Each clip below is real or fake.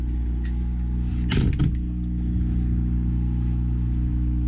real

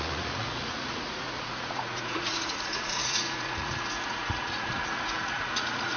fake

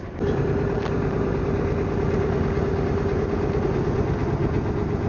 real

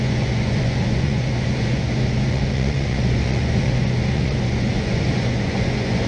fake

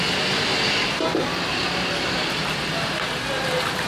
real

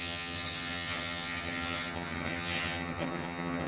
fake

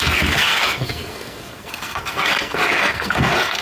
fake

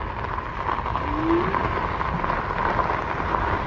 real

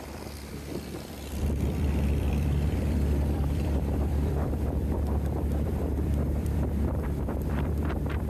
fake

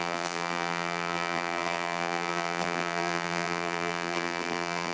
fake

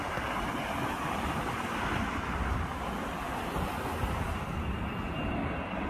real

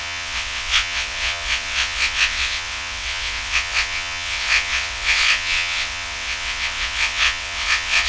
fake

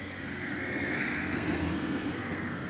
fake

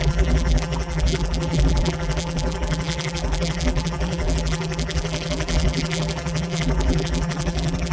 fake